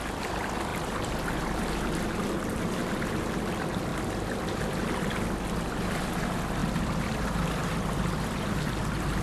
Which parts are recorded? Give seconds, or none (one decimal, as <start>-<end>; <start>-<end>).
0.0-0.7; 1.3-6.6; 8.6-9.2